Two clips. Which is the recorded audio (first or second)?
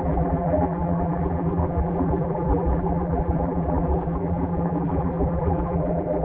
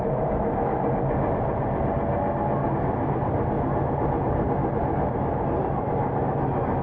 second